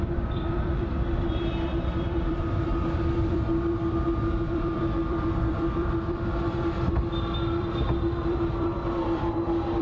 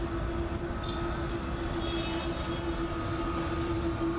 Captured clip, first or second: second